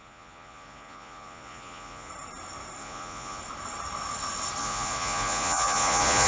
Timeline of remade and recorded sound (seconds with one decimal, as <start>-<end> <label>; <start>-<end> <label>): 0.0-2.1 remade; 2.1-2.8 recorded; 2.8-3.4 remade; 3.4-4.6 recorded; 4.6-6.3 remade

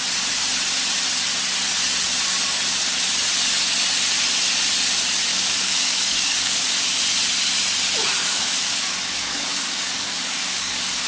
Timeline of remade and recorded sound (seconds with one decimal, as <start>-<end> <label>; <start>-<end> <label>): 0.0-5.3 recorded; 5.3-6.7 remade; 6.7-8.2 recorded; 8.2-11.1 remade

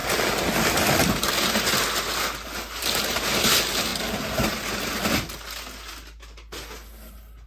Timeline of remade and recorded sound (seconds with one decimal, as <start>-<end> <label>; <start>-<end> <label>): 0.0-7.5 recorded

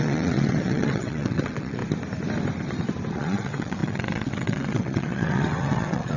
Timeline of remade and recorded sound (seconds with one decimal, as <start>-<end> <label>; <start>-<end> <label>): 0.0-1.8 remade; 1.8-3.1 recorded; 3.1-6.2 remade

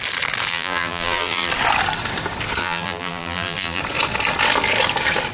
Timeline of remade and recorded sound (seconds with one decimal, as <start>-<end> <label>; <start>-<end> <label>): 0.0-0.5 recorded; 0.5-1.5 remade; 1.5-2.6 recorded; 2.6-3.8 remade; 3.8-5.3 recorded